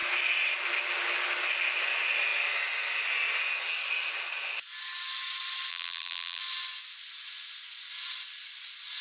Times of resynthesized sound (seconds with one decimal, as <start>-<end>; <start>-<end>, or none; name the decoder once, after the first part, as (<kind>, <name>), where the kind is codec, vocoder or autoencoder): 5.7-6.4 (vocoder, BigVGAN v2)